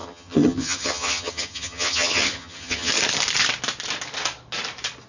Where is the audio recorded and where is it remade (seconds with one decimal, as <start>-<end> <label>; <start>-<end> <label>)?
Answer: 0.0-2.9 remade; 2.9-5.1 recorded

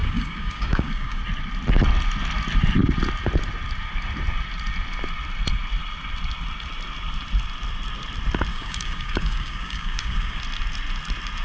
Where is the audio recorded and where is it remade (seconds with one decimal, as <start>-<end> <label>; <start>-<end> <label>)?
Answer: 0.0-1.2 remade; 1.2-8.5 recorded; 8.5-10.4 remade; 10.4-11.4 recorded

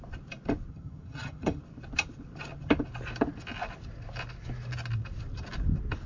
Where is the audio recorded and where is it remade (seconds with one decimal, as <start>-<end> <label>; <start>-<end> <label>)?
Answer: 0.0-0.7 recorded; 0.7-1.6 remade; 1.6-6.1 recorded

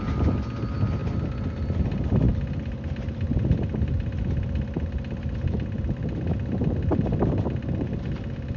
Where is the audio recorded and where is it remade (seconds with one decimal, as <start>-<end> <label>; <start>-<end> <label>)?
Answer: 0.0-8.6 recorded

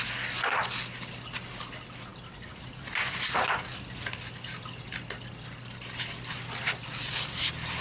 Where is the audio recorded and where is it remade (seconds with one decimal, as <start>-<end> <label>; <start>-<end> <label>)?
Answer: 0.0-7.8 recorded